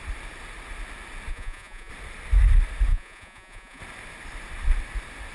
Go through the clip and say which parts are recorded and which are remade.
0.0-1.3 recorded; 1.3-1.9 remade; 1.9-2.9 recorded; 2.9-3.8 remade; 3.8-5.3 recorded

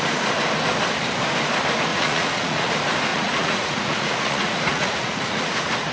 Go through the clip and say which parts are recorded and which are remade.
0.0-1.9 recorded; 1.9-2.7 remade; 2.7-3.1 recorded; 3.1-5.9 remade

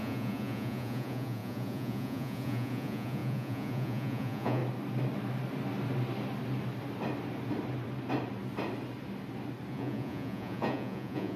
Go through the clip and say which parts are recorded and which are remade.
0.0-4.6 remade; 4.6-9.7 recorded; 9.7-11.4 remade